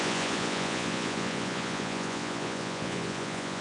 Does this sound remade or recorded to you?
remade